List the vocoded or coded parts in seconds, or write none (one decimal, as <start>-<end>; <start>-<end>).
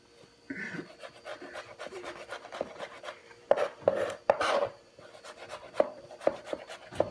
1.3-2.5; 3.2-6.6